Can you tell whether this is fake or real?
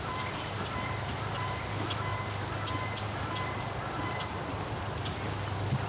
real